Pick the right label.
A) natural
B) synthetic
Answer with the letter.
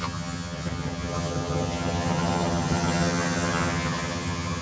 B